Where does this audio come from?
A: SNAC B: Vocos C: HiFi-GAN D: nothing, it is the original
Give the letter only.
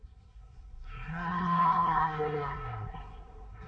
A